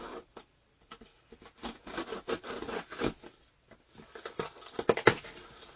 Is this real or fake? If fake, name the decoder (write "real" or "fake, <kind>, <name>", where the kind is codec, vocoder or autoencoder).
fake, vocoder, BigVGAN v2